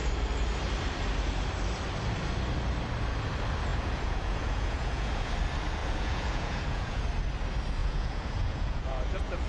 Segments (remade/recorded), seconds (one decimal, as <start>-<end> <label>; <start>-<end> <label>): 0.0-3.7 recorded; 3.7-5.3 remade; 5.3-5.8 recorded; 5.8-7.0 remade; 7.0-7.8 recorded; 7.8-9.5 remade